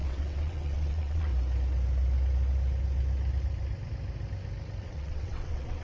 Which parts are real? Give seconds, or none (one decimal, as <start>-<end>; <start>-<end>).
1.3-4.8